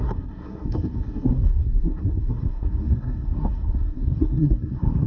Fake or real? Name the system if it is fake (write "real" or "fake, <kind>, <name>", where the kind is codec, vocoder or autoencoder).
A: fake, codec, SNAC